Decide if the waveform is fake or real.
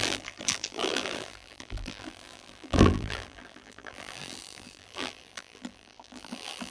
fake